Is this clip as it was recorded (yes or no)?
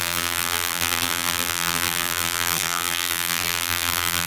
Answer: no